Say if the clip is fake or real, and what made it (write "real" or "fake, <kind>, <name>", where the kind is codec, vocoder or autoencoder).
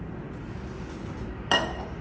real